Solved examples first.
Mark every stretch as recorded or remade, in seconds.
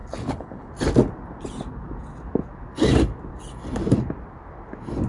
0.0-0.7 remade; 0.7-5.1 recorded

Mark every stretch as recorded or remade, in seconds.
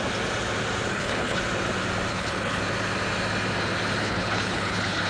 0.0-0.9 recorded; 0.9-1.4 remade; 1.4-2.1 recorded; 2.1-2.6 remade; 2.6-4.0 recorded; 4.0-5.1 remade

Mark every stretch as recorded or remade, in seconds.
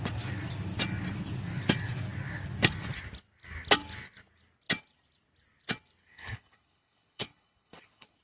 0.0-6.0 recorded; 6.0-8.2 remade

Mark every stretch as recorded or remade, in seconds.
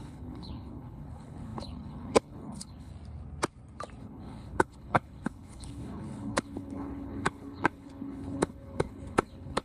0.0-2.9 remade; 2.9-4.0 recorded; 4.0-9.6 remade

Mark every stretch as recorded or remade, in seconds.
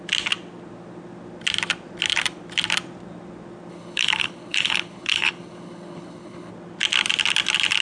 0.0-3.7 recorded; 3.7-6.5 remade; 6.5-7.8 recorded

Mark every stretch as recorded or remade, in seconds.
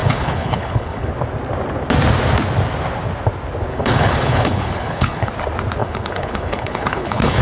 0.0-1.1 remade; 1.1-3.7 recorded; 3.7-5.3 remade; 5.3-5.8 recorded; 5.8-7.4 remade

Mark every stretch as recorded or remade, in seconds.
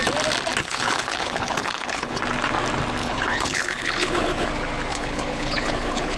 0.0-0.6 recorded; 0.6-2.2 remade; 2.2-3.0 recorded; 3.0-4.5 remade; 4.5-4.9 recorded; 4.9-6.2 remade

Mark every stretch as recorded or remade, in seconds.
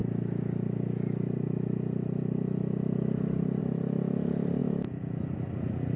0.0-6.0 recorded